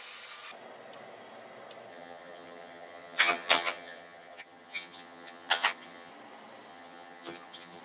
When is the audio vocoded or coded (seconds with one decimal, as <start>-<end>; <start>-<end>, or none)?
1.9-6.1; 6.7-7.8